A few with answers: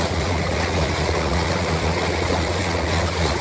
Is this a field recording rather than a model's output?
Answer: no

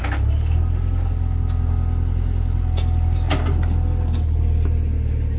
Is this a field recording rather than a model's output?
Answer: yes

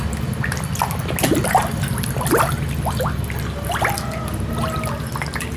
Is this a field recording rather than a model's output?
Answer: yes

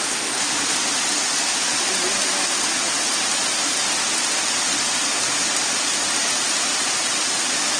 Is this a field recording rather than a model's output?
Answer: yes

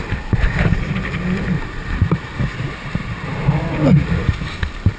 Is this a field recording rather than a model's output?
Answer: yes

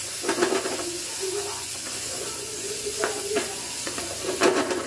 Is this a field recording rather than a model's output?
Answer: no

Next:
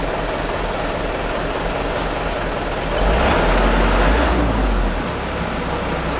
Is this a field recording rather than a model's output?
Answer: yes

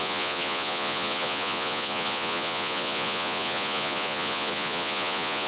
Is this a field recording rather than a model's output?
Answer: no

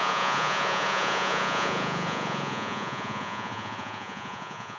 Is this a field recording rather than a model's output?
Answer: no